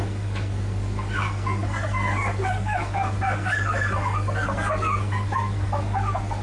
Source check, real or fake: fake